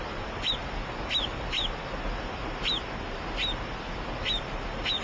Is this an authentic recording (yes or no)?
yes